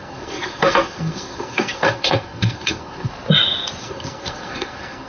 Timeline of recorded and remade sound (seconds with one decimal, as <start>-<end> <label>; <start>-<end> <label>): 0.0-3.1 remade; 3.1-3.8 recorded; 3.8-5.1 remade